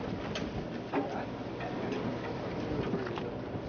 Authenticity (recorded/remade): recorded